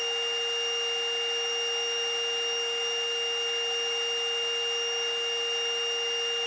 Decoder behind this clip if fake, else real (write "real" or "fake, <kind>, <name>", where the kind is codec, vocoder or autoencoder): real